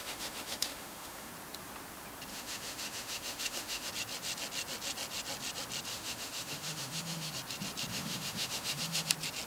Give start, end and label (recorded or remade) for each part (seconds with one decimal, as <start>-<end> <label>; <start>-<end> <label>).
0.0-1.3 remade; 1.3-2.3 recorded; 2.3-3.9 remade; 3.9-5.9 recorded; 5.9-7.3 remade; 7.3-7.9 recorded; 7.9-9.1 remade; 9.1-9.5 recorded